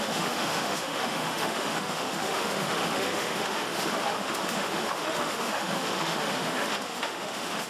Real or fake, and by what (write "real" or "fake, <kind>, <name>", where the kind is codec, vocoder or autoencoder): fake, autoencoder, DAC-VAE